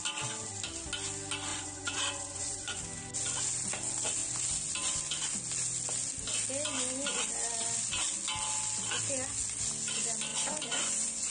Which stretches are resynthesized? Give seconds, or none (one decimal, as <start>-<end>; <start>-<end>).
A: 1.5-2.8; 10.3-11.3